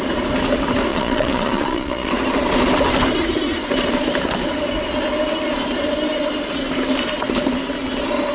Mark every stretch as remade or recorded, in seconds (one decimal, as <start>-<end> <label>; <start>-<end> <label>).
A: 0.0-0.9 recorded; 0.9-2.1 remade; 2.1-8.3 recorded